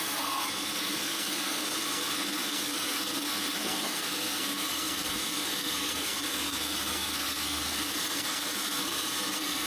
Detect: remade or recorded remade